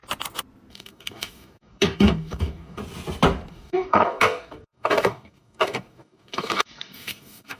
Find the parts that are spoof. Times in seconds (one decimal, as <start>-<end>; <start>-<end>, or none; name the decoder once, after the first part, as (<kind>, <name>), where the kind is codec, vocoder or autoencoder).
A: 0.7-2.8 (codec, DAC); 3.5-7.6

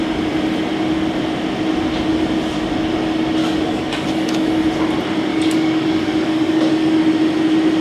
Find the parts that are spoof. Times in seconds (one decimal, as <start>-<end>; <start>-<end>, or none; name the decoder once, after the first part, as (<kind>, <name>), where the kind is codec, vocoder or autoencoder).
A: 3.4-4.5 (codec, DAC); 5.3-7.0